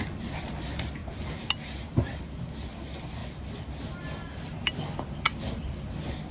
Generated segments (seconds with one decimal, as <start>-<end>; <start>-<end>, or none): none